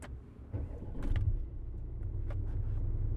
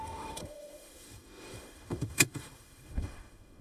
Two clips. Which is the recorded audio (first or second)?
first